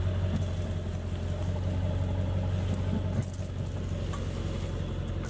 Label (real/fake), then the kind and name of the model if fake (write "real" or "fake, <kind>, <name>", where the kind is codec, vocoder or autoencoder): real